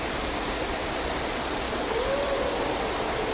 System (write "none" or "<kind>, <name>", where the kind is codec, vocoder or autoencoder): none